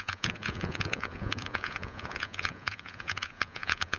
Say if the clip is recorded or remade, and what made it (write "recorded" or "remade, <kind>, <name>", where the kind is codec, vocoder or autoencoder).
remade, vocoder, Vocos